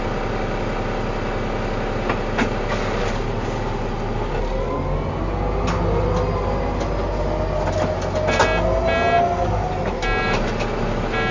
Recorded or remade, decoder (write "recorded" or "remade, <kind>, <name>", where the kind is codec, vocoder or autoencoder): recorded